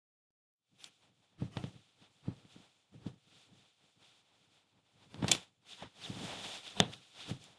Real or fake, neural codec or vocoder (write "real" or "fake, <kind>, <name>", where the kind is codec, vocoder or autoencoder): real